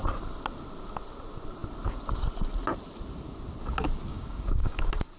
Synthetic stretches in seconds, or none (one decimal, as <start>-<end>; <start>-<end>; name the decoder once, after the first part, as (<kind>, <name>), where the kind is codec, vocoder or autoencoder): 4.1-4.8 (codec, DAC)